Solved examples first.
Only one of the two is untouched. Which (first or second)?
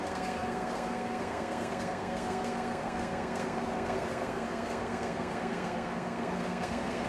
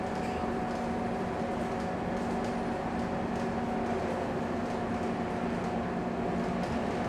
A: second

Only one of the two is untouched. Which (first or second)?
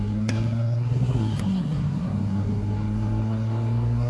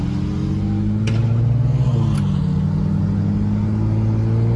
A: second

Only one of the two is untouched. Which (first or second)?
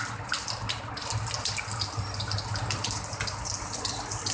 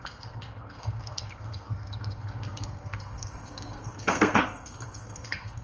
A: first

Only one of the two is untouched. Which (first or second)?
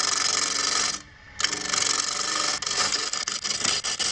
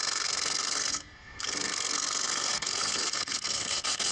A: first